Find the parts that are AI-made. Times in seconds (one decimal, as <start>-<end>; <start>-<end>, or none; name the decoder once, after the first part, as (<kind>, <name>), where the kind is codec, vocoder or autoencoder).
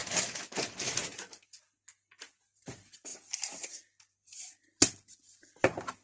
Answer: 0.0-1.6 (vocoder, BigVGAN v2); 3.1-5.5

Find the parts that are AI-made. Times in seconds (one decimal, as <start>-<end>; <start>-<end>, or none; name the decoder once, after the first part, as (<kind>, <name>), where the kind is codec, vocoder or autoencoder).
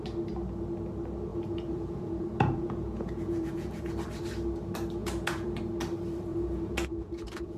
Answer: 1.3-3.9 (vocoder, Vocos); 5.0-5.6; 6.3-7.6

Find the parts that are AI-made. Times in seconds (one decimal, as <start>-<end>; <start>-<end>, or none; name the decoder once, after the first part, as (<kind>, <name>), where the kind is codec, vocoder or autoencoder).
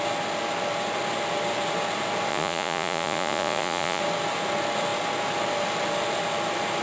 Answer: 2.3-4.0 (vocoder, Vocos)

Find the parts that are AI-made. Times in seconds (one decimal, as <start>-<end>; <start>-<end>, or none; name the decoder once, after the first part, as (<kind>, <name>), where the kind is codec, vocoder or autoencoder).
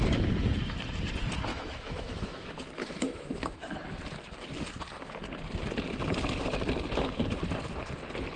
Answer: 1.5-4.0 (autoencoder, DAC-VAE)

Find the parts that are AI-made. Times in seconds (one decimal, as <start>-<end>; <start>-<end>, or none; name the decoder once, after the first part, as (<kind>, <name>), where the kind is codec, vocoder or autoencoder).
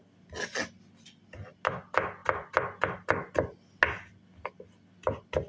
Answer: none